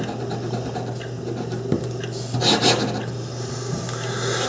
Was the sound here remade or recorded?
recorded